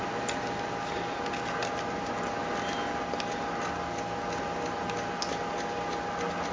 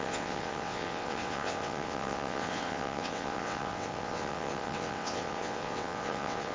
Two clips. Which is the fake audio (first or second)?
second